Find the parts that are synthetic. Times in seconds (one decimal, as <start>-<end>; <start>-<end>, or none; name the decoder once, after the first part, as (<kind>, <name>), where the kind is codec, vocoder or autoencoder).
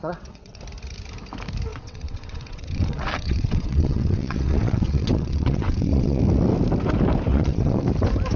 0.0-0.6 (vocoder, WaveNeXt); 1.7-6.2; 7.3-7.8